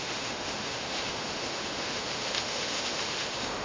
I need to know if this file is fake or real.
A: fake